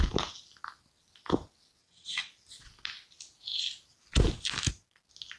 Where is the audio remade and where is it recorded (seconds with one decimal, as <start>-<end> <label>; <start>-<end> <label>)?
0.0-1.8 recorded; 1.8-2.3 remade; 2.3-5.4 recorded